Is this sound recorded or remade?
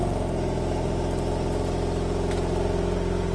recorded